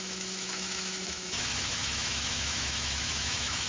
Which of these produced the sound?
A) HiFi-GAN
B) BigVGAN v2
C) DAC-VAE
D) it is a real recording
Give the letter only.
C